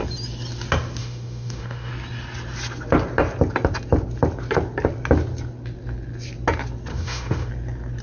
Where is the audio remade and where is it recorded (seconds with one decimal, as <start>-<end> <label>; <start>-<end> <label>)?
0.0-1.0 recorded; 1.0-1.9 remade; 1.9-6.9 recorded; 6.9-7.5 remade; 7.5-8.0 recorded